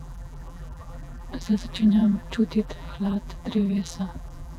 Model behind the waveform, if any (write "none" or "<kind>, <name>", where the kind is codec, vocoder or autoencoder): vocoder, BigVGAN v2